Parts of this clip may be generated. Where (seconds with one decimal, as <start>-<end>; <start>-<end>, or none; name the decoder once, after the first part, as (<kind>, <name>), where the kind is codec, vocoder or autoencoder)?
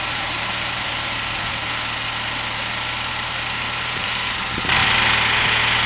0.0-1.6 (vocoder, BigVGAN v2); 3.1-4.8